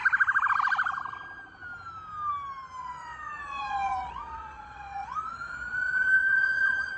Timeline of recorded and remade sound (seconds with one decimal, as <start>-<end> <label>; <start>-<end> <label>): 0.0-2.8 recorded; 2.8-7.0 remade